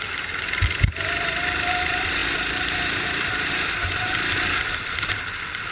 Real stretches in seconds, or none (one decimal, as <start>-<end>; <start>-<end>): 0.0-5.7